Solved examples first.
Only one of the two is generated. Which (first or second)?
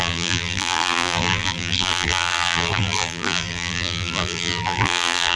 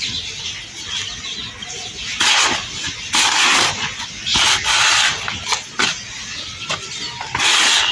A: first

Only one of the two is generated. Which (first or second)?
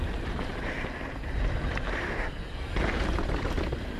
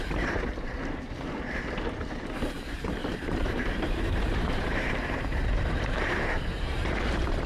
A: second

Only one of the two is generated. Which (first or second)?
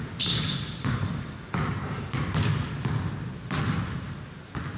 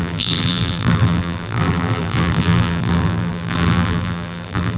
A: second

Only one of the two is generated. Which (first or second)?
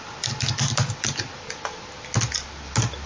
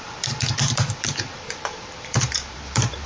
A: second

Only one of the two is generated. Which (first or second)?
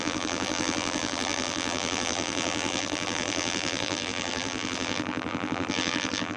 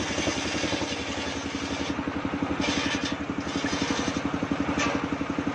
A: first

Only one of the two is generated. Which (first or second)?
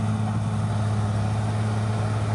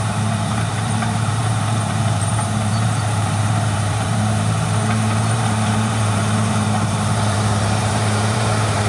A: second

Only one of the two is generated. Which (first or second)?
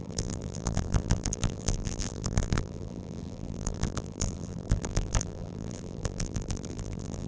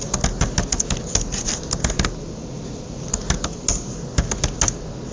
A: first